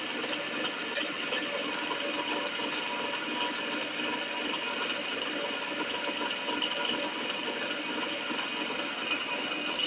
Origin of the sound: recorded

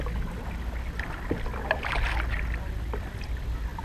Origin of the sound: recorded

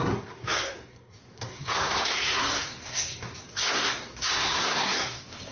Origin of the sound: remade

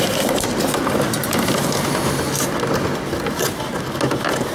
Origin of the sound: recorded